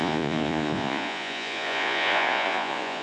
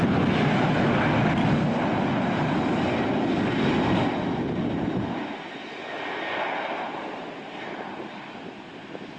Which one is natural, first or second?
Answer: second